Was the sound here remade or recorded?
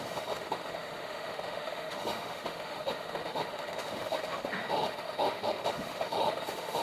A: remade